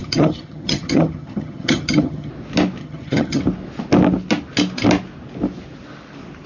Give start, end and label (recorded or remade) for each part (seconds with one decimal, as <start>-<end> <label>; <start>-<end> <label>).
0.0-2.3 remade; 2.3-2.8 recorded; 2.8-3.4 remade; 3.4-6.5 recorded